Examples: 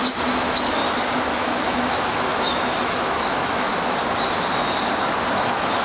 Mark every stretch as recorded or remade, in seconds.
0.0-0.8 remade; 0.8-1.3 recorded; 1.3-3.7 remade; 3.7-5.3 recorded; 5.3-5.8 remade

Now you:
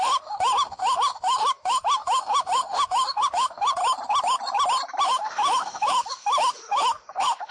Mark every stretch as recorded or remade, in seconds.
0.0-3.8 remade; 3.8-5.0 recorded; 5.0-7.5 remade

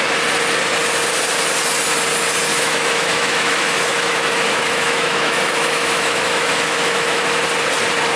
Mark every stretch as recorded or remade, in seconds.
0.0-2.5 recorded; 2.5-7.4 remade; 7.4-8.2 recorded